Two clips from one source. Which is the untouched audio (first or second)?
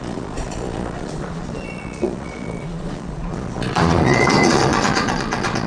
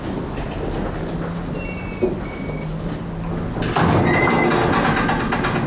second